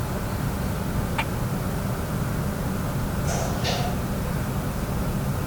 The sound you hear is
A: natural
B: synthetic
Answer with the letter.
A